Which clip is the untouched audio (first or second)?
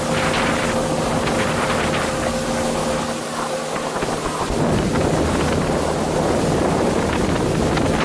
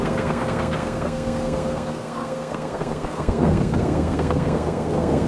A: first